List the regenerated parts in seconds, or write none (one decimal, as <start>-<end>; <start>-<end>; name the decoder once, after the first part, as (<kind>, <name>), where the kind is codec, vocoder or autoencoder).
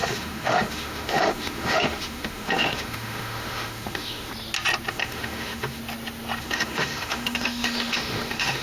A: 0.0-4.3 (autoencoder, DAC-VAE); 4.9-5.8; 6.4-8.6